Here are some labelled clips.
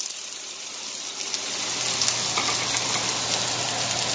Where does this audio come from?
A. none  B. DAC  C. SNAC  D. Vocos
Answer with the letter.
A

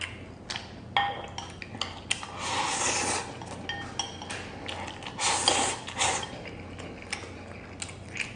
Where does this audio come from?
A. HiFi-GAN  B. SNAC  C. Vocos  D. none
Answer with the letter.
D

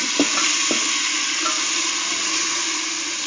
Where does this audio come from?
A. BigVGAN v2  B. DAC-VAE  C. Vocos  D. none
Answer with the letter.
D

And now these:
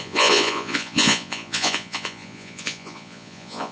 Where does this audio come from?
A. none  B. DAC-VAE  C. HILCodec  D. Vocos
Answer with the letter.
D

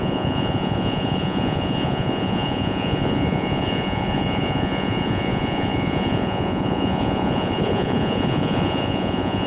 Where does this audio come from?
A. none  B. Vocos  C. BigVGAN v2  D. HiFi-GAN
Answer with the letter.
B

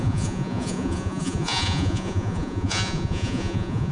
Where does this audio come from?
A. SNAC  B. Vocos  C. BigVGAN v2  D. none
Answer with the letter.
B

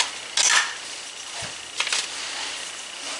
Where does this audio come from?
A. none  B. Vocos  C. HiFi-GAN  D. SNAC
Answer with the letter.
A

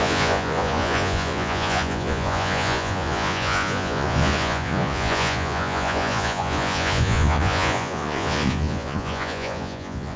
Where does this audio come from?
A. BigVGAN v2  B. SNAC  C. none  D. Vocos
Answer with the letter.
D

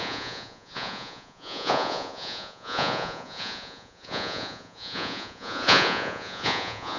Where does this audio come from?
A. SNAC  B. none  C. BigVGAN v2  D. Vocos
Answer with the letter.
D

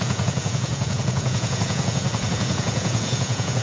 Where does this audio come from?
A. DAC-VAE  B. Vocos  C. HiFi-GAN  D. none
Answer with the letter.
B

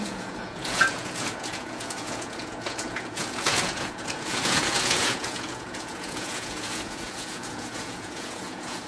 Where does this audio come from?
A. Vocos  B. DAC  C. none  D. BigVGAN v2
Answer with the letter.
A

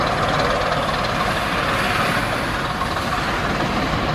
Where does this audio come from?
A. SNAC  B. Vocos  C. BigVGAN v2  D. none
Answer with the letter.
D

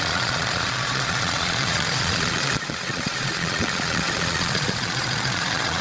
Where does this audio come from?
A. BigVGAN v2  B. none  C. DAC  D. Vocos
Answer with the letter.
D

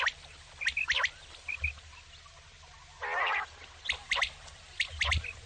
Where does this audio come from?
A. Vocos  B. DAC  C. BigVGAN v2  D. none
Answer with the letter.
D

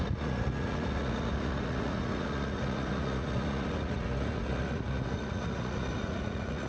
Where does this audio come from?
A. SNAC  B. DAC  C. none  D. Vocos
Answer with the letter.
D